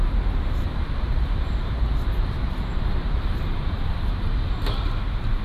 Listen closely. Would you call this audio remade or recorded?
remade